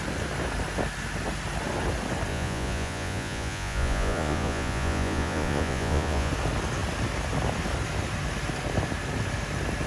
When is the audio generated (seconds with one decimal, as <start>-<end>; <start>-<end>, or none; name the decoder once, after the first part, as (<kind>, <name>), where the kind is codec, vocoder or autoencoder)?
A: 2.3-6.3 (vocoder, Vocos)